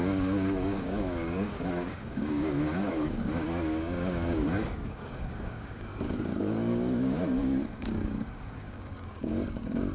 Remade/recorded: remade